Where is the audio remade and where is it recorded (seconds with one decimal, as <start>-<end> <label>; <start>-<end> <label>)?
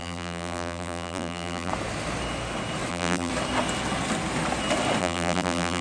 0.0-1.7 remade; 1.7-2.9 recorded; 2.9-3.3 remade; 3.3-5.0 recorded; 5.0-5.8 remade